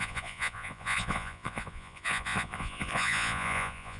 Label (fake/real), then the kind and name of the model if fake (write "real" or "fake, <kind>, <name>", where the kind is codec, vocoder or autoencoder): fake, vocoder, Vocos